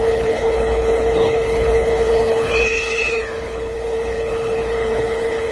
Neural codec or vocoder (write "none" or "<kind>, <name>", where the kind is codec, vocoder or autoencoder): codec, HILCodec